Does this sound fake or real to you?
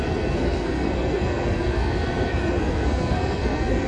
fake